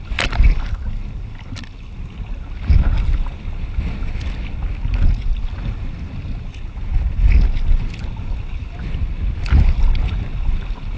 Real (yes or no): yes